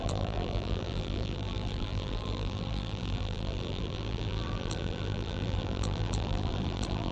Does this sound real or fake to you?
fake